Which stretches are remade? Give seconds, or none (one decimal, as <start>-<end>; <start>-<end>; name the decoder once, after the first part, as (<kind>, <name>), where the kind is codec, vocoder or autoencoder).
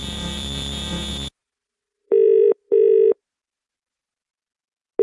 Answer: 0.0-0.9 (vocoder, BigVGAN v2); 1.4-3.2